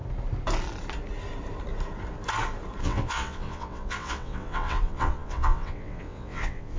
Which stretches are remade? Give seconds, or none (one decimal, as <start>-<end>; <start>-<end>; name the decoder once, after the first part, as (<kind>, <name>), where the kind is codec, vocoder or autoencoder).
2.8-6.8 (vocoder, WaveNeXt)